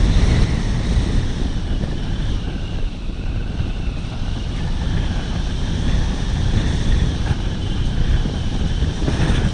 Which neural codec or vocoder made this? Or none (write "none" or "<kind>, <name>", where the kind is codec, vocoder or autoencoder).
vocoder, BigVGAN v2